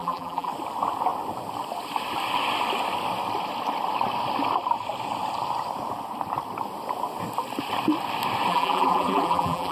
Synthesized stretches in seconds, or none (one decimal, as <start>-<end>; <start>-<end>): 0.0-0.5; 8.5-9.7